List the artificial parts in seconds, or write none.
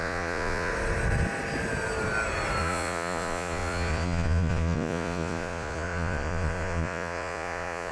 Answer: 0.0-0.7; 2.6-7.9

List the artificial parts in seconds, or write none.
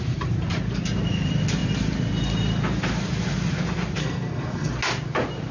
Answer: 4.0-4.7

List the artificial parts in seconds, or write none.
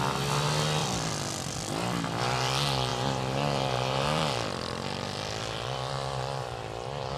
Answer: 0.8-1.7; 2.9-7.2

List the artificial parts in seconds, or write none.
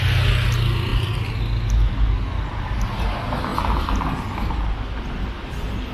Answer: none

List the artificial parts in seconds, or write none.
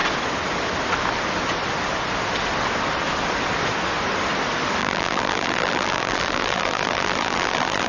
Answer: 4.8-7.9